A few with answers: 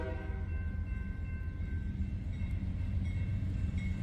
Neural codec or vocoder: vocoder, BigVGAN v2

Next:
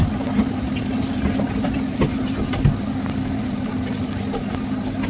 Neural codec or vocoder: none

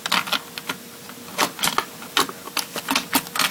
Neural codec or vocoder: none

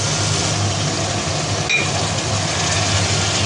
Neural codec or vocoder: none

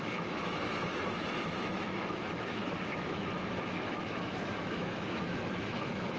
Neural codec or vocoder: autoencoder, DAC-VAE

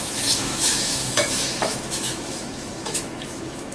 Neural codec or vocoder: autoencoder, DAC-VAE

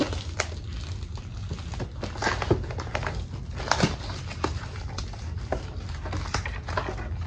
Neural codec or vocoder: none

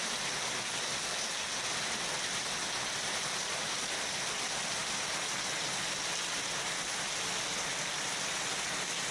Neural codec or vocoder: none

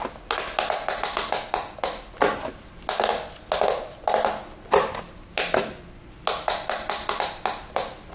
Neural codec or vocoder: none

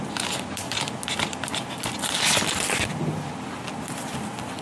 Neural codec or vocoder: none